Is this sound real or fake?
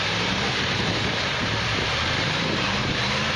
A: fake